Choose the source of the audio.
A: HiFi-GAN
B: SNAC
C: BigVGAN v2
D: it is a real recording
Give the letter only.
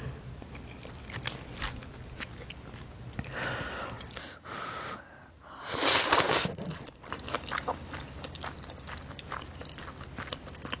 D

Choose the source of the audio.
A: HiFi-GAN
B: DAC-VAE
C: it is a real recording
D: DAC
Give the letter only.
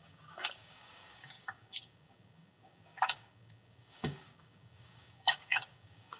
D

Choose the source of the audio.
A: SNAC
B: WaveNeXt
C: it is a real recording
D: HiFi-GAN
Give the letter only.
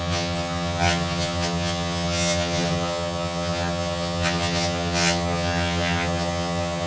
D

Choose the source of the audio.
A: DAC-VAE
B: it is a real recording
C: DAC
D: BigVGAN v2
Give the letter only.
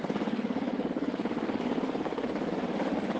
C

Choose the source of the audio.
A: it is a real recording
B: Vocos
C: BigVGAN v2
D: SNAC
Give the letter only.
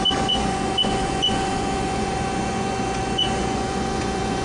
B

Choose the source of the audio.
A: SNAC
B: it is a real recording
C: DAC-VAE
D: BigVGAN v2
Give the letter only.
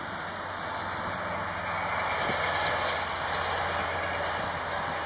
B